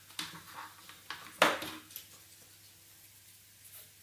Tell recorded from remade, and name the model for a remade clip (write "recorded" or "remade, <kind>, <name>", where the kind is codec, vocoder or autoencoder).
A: recorded